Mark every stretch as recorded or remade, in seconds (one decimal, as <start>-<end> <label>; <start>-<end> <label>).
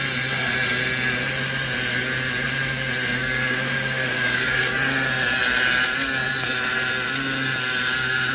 0.0-3.2 recorded; 3.2-4.6 remade; 4.6-8.3 recorded